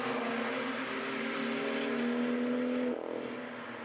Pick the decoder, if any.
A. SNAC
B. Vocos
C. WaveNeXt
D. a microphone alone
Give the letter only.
D